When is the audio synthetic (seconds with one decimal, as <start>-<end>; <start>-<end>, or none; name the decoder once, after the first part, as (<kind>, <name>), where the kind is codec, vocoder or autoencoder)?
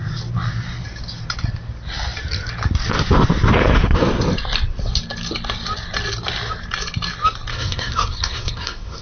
7.5-9.0 (codec, SNAC)